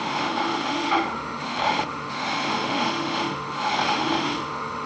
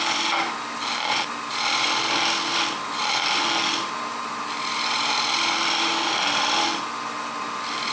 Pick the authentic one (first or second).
second